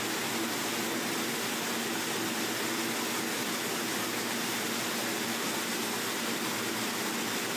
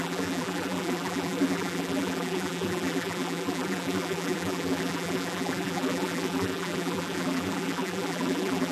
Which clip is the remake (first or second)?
second